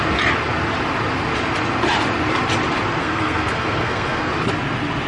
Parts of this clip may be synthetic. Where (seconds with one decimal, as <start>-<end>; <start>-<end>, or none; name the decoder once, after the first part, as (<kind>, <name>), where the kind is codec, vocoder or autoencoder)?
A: 3.0-4.3 (codec, SNAC)